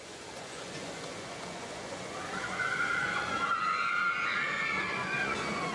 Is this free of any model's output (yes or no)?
no